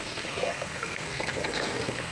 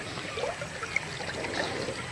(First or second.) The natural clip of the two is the second